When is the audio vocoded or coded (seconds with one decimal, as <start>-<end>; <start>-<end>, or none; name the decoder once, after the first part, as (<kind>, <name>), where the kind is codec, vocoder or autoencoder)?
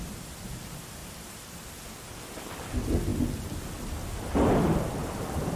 1.0-2.6 (vocoder, BigVGAN v2); 5.0-5.6